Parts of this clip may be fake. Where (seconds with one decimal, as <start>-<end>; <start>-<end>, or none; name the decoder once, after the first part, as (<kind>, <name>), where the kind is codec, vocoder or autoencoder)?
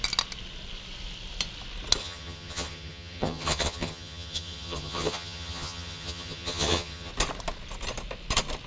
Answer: 2.0-7.1 (vocoder, HiFi-GAN)